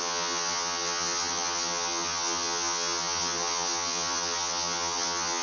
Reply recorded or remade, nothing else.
remade